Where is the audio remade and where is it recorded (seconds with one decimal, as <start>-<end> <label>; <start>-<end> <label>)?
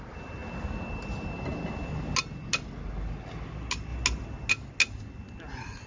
0.0-5.9 recorded